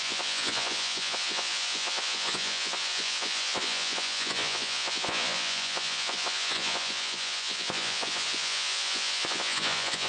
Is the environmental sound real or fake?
fake